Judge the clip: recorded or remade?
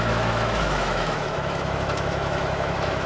remade